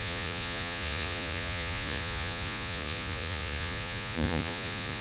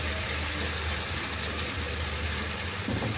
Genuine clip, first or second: second